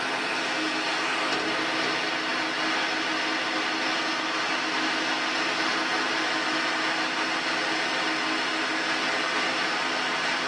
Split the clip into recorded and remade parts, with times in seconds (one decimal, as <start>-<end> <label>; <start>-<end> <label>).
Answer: 0.0-10.5 recorded